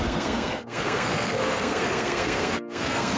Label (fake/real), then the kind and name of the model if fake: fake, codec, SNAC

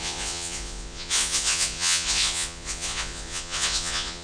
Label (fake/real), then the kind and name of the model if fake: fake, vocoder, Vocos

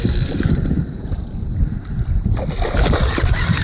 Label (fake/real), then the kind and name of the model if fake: real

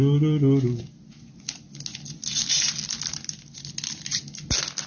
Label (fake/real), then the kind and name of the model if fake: real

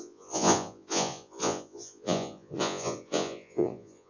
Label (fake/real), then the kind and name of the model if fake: fake, vocoder, Vocos